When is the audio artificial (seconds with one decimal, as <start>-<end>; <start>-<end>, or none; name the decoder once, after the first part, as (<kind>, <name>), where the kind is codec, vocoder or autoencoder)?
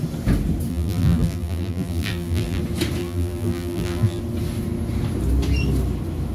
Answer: 0.7-2.6 (vocoder, BigVGAN v2); 3.0-4.2